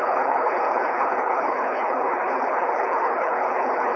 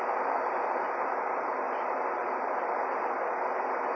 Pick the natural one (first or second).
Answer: second